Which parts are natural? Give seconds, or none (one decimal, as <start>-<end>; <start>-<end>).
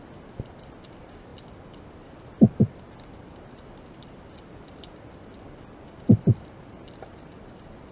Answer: none